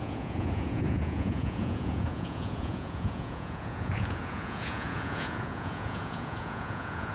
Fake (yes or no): yes